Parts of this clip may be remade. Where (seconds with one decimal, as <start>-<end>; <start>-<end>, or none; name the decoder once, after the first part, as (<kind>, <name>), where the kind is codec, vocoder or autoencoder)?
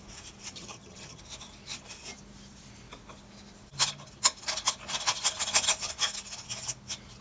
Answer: 0.5-1.2 (vocoder, HiFi-GAN)